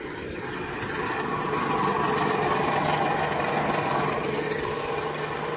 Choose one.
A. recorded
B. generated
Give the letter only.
A